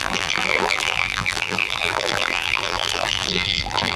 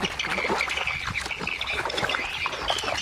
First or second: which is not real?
first